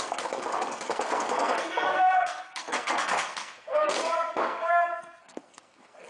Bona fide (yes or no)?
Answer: no